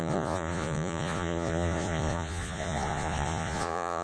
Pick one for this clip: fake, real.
fake